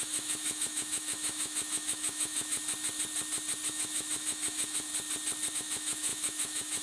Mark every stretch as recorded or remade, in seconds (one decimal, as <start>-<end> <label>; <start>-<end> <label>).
0.0-2.6 remade; 2.6-3.7 recorded; 3.7-4.9 remade; 4.9-5.5 recorded; 5.5-6.8 remade